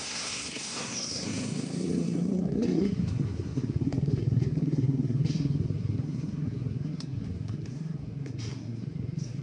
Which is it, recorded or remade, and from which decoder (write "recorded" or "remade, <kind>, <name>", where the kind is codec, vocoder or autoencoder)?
remade, codec, SNAC